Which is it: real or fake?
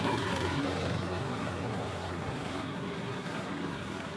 fake